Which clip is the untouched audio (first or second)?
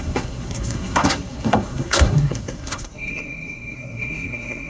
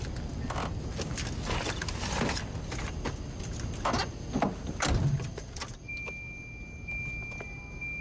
second